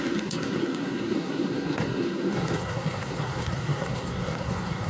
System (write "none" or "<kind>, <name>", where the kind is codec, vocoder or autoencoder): codec, SNAC